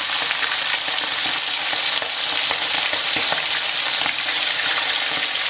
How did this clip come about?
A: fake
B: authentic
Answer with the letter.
B